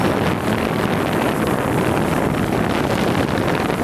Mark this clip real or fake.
real